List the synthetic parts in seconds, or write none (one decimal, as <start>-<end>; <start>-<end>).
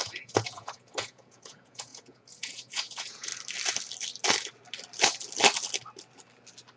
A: 0.0-3.3